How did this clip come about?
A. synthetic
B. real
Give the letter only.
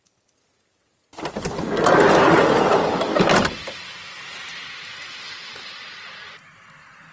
B